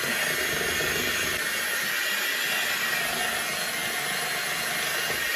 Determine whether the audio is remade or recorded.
recorded